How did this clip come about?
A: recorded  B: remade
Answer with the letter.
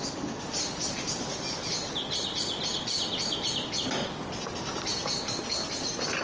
A